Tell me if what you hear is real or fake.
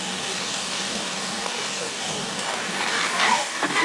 fake